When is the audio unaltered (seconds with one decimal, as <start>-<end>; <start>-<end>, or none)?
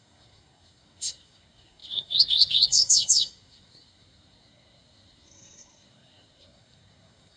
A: none